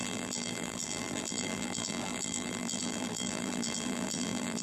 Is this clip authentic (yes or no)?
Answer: no